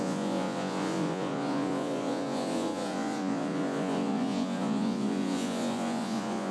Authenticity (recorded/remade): remade